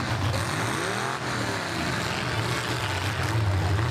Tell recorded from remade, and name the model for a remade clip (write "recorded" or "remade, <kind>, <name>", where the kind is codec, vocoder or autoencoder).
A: recorded